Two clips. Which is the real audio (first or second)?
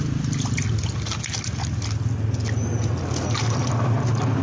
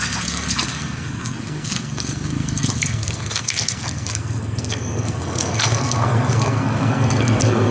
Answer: first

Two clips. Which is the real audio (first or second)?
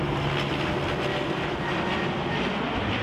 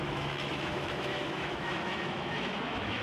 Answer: first